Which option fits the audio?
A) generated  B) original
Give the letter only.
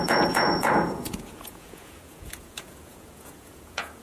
A